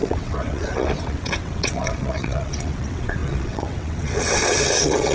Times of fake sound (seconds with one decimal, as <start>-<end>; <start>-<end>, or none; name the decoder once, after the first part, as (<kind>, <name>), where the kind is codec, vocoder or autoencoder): 0.0-5.1 (vocoder, WaveNeXt)